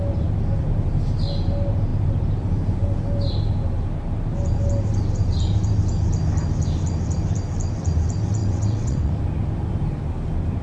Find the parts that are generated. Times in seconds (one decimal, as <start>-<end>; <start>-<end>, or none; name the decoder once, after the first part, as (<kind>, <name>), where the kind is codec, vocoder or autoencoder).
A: 8.4-9.1 (vocoder, WaveNeXt)